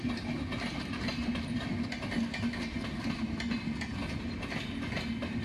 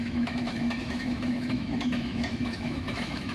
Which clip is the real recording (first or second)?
first